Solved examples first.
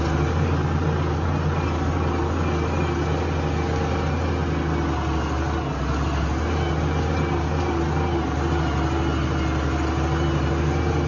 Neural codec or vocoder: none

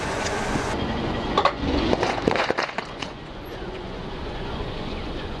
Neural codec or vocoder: vocoder, Vocos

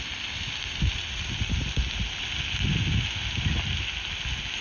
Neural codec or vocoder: none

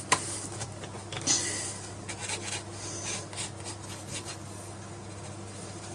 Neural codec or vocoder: none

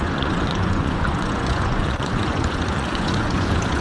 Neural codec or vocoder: vocoder, Vocos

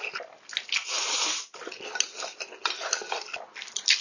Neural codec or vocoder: none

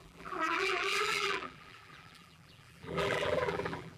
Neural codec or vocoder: vocoder, BigVGAN v2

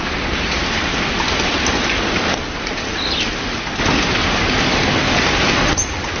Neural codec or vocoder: none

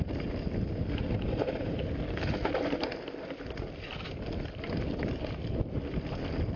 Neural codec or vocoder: none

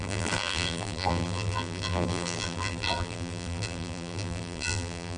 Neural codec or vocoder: vocoder, BigVGAN v2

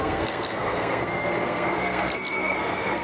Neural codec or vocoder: codec, SNAC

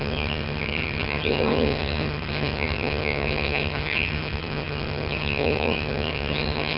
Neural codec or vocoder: vocoder, HiFi-GAN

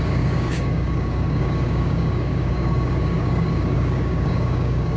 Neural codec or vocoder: codec, DAC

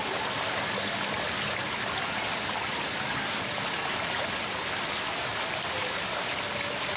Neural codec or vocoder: none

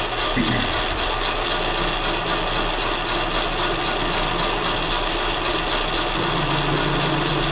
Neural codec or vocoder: none